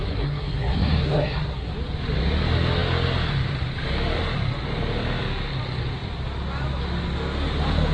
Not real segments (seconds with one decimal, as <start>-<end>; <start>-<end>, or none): 0.0-1.7